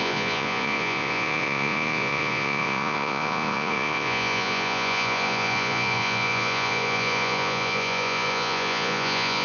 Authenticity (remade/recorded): remade